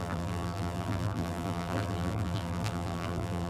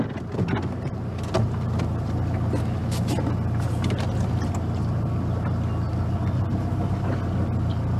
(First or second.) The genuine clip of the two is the second